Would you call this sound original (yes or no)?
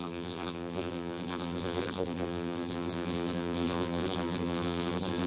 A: no